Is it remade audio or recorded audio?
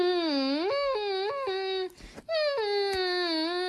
recorded